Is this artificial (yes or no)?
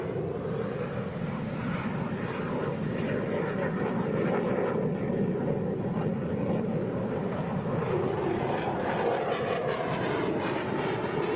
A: no